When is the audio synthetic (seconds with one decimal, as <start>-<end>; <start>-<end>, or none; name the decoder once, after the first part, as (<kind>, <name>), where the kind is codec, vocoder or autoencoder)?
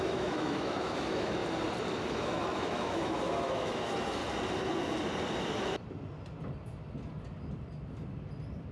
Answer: 0.0-1.4 (autoencoder, DAC-VAE); 2.1-4.2